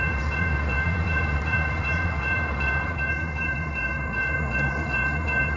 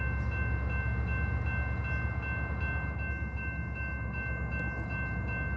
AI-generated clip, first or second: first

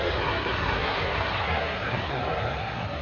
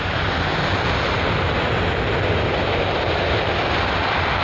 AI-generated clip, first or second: first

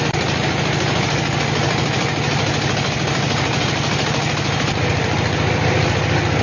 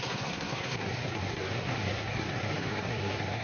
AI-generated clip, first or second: second